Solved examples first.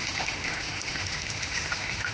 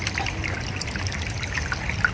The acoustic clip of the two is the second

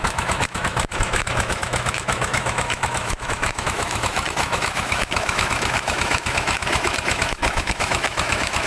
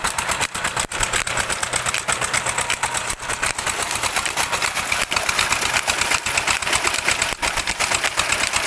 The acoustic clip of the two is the second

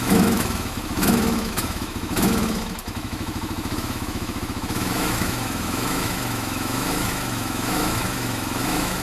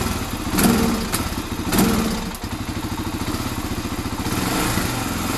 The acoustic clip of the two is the second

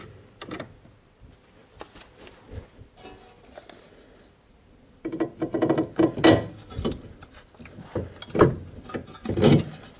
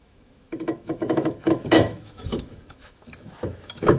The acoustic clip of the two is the first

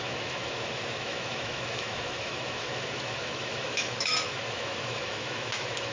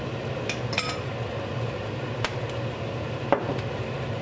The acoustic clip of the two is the second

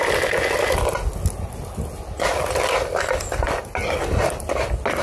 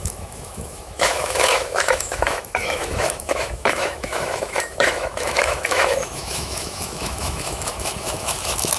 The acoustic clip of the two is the first